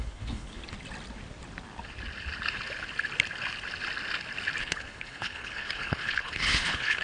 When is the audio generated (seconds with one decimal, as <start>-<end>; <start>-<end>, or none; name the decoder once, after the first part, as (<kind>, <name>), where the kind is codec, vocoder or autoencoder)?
0.0-0.6 (codec, HILCodec); 4.6-7.0